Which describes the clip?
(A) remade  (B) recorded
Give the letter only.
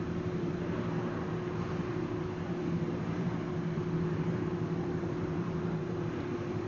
A